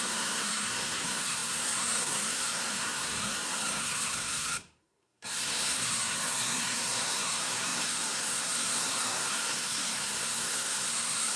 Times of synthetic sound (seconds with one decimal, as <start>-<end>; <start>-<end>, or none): 0.0-11.4